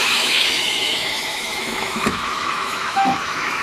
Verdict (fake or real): fake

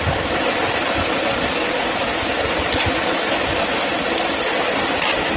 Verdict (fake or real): real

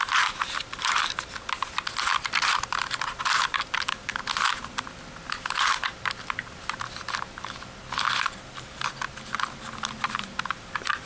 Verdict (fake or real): real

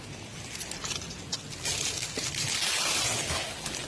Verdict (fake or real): real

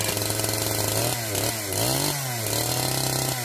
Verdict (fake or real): real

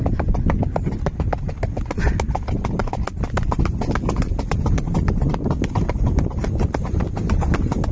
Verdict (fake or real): real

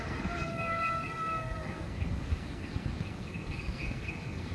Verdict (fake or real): fake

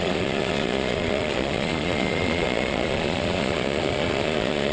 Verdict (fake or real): fake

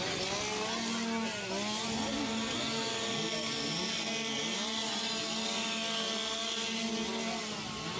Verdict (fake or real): real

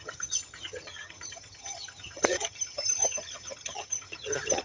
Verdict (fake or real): fake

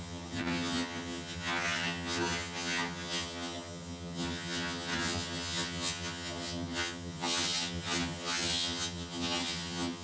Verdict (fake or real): fake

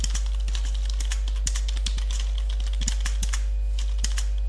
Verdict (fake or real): real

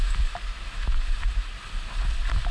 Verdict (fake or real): real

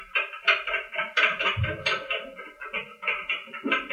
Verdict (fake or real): real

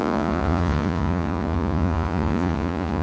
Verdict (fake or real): fake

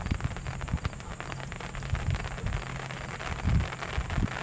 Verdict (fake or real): real